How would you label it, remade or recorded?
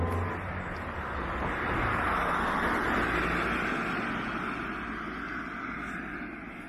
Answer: recorded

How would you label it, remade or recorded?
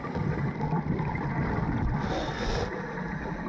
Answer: recorded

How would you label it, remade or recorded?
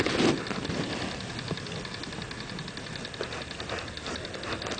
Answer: recorded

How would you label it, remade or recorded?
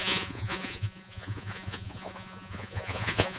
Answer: remade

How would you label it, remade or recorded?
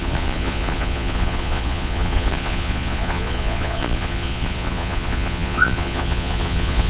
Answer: remade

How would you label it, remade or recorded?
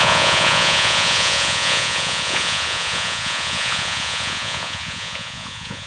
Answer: remade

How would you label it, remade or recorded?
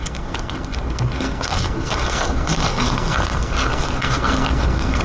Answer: remade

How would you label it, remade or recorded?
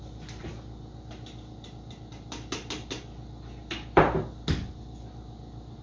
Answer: recorded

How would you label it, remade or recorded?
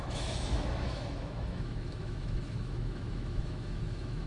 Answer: remade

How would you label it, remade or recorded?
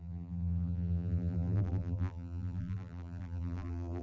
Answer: remade